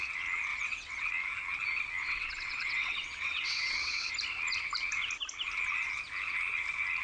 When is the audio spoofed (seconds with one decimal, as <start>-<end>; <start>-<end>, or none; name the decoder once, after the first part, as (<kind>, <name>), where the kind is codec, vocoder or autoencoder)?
0.5-1.1 (vocoder, WaveNeXt); 2.0-4.1